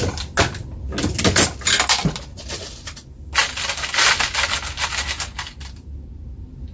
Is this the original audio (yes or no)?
yes